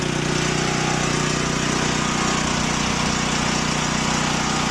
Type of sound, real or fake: real